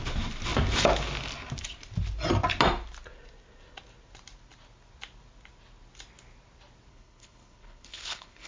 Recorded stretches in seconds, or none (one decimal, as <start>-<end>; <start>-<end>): 0.0-6.9